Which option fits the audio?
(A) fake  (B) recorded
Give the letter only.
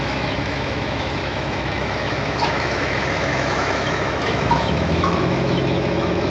A